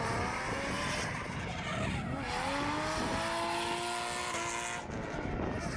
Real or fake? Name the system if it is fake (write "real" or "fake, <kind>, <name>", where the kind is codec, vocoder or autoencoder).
real